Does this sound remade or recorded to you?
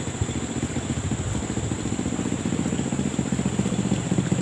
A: recorded